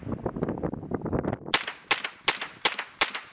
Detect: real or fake real